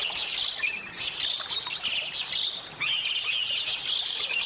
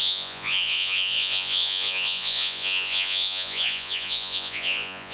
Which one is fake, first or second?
second